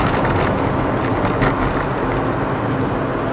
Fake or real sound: real